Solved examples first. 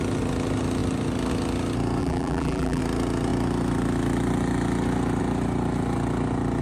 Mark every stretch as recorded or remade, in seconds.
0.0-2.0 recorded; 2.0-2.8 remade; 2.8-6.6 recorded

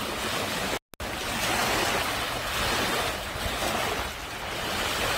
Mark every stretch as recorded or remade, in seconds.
0.0-1.6 recorded; 1.6-2.4 remade; 2.4-3.8 recorded; 3.8-5.2 remade

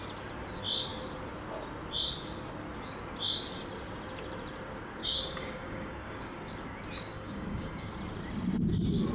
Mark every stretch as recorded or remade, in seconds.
0.0-5.0 recorded; 5.0-6.5 remade; 6.5-7.1 recorded; 7.1-7.9 remade; 7.9-9.1 recorded

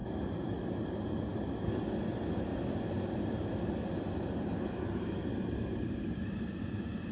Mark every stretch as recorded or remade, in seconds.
0.0-1.3 remade; 1.3-2.0 recorded; 2.0-2.5 remade; 2.5-4.3 recorded; 4.3-7.1 remade